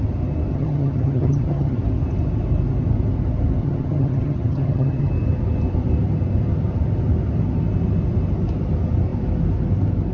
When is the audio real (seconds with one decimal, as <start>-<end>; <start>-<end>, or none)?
0.0-0.5; 1.8-3.6; 5.1-10.1